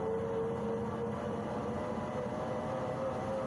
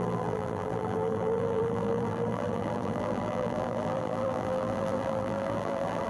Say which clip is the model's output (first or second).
second